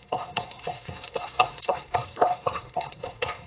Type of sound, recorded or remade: remade